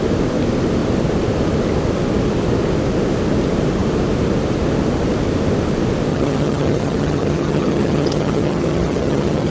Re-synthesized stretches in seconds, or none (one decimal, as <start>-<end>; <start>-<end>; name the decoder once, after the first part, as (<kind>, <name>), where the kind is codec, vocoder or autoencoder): 6.1-9.5 (vocoder, HiFi-GAN)